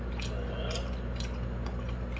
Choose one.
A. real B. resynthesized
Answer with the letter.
A